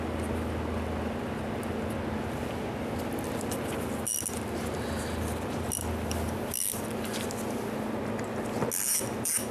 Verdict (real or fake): real